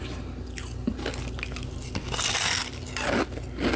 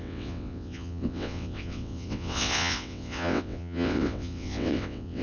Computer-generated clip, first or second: second